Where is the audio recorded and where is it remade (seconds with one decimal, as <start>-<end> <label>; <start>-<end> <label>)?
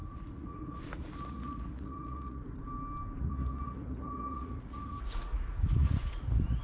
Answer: 0.0-2.4 remade; 2.4-3.2 recorded; 3.2-6.6 remade